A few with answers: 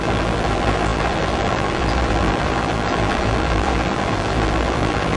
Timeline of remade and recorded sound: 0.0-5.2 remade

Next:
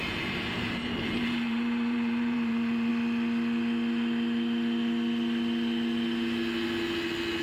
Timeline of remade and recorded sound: 0.0-2.9 remade; 2.9-7.4 recorded